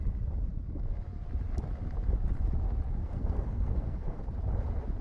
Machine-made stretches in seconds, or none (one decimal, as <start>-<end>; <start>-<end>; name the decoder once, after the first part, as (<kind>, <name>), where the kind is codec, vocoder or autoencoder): 3.0-4.2 (codec, SNAC)